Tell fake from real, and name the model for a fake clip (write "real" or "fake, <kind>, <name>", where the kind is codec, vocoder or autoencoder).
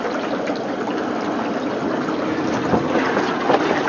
real